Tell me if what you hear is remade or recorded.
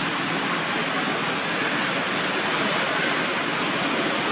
recorded